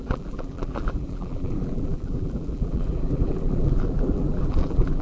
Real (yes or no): no